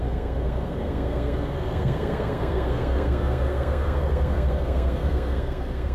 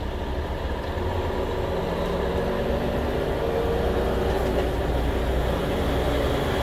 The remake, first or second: first